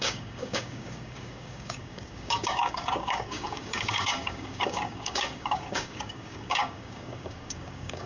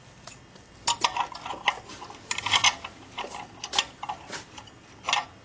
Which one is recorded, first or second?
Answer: second